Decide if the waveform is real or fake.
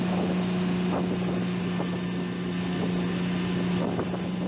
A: real